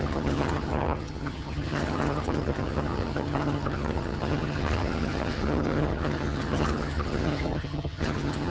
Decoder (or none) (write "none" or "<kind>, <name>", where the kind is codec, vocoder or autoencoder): vocoder, HiFi-GAN